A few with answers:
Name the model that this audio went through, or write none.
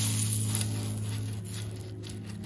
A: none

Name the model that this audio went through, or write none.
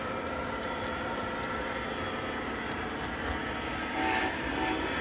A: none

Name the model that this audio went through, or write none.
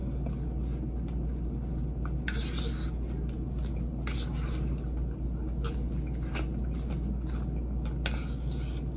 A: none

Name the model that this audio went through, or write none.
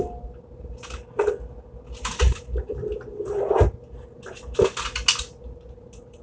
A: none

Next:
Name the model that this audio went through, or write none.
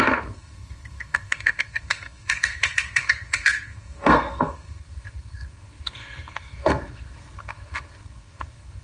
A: codec, SNAC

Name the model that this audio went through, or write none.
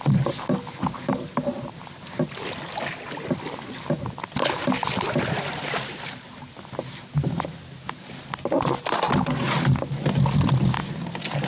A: none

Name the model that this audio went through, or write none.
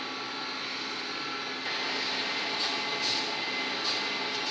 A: none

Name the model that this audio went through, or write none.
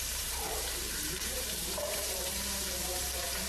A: vocoder, BigVGAN v2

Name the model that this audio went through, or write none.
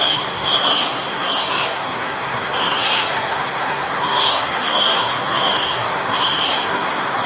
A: codec, SNAC